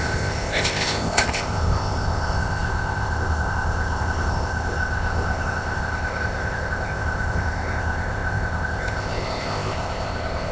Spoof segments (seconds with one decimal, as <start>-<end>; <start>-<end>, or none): 0.0-10.5